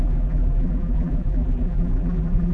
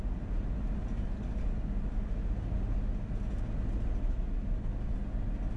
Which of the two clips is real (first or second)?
second